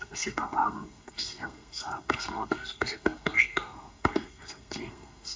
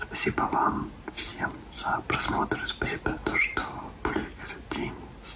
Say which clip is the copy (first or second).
first